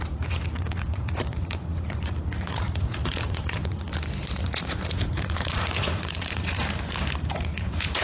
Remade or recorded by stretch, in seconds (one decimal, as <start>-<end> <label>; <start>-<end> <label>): 0.0-3.9 remade; 3.9-4.4 recorded; 4.4-6.6 remade; 6.6-7.3 recorded; 7.3-8.0 remade